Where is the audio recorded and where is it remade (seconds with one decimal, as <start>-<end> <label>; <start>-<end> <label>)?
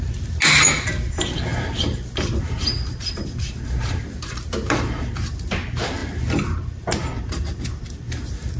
0.0-8.6 recorded